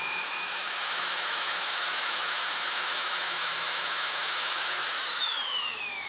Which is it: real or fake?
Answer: fake